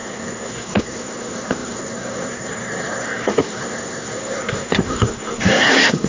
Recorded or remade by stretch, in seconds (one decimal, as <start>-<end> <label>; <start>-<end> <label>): 0.0-6.1 remade